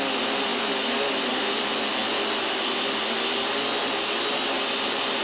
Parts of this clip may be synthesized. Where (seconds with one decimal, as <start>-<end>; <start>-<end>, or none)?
none